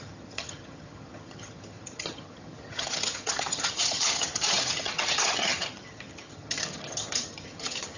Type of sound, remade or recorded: remade